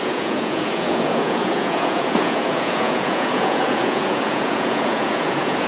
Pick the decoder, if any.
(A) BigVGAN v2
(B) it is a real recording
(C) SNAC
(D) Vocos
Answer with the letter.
D